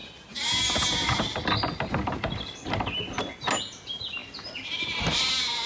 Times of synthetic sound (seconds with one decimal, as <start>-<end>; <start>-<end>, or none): 4.2-5.3